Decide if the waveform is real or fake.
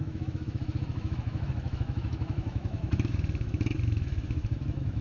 fake